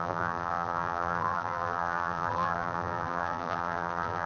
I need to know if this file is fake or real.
fake